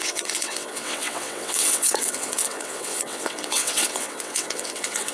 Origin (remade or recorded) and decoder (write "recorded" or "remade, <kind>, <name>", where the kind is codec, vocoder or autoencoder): remade, vocoder, WaveNeXt